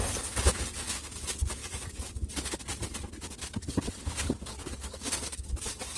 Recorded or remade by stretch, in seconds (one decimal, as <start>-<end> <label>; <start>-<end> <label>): 0.0-1.6 recorded; 1.6-2.4 remade; 2.4-4.7 recorded; 4.7-6.0 remade